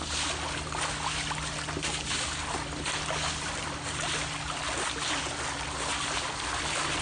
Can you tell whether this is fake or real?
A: real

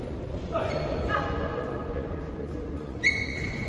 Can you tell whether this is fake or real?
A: fake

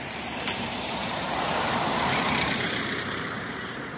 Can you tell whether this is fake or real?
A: fake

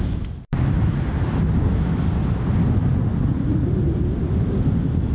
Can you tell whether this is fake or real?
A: real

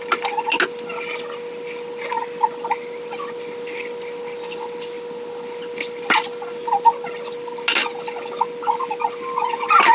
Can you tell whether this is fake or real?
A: real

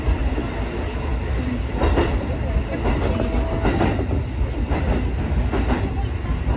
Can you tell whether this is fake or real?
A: real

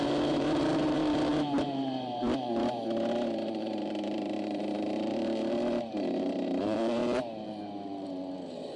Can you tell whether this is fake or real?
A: fake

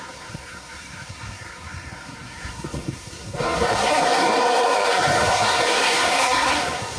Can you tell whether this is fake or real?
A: fake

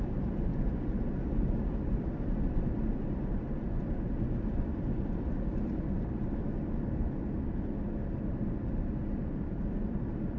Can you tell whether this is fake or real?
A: real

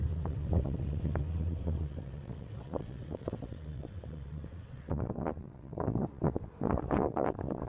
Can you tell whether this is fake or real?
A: fake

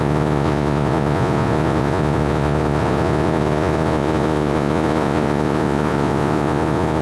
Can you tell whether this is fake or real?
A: fake